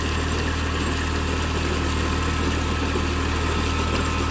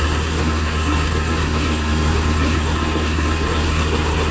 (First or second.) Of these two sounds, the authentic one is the first